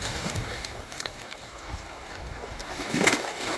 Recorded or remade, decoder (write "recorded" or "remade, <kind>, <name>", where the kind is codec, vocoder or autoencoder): remade, codec, DAC